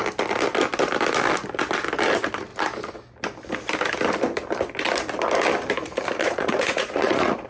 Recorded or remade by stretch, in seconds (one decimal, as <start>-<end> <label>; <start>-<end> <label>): 0.0-6.2 recorded; 6.2-7.5 remade